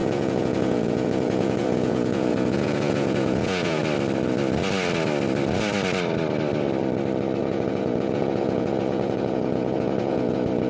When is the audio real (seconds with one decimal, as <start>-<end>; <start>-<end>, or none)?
3.8-7.4